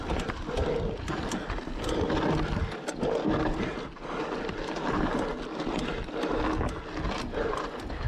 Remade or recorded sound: recorded